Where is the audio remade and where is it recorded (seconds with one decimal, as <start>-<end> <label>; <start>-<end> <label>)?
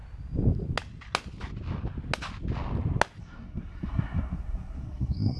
0.0-3.2 recorded; 3.2-5.4 remade